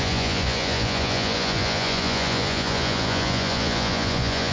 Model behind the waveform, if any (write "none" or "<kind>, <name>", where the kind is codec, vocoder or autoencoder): vocoder, Vocos